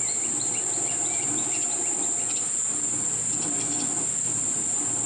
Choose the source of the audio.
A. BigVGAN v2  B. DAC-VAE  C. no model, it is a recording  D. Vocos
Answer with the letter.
C